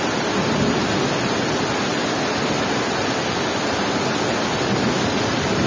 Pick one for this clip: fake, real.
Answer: real